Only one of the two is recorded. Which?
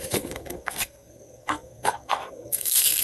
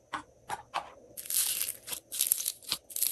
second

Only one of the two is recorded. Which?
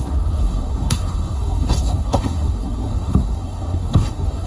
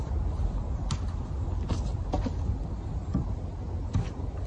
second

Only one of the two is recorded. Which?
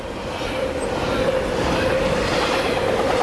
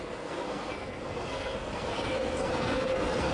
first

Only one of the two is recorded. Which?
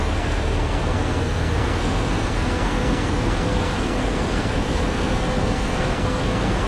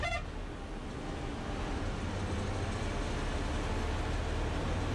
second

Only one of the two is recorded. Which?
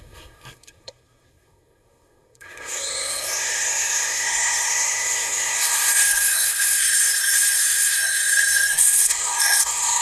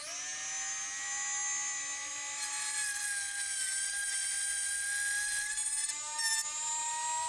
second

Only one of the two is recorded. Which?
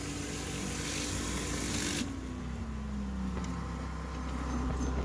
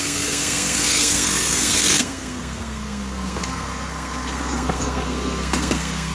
first